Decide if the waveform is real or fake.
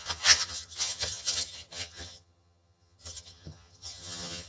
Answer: fake